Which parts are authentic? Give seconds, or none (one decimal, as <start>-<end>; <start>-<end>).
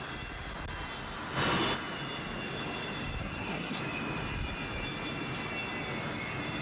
0.0-3.2; 3.8-6.6